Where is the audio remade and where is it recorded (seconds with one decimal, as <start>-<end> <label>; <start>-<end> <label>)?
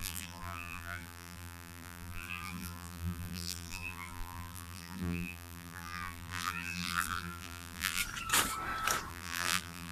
0.0-8.0 remade; 8.0-9.1 recorded; 9.1-9.9 remade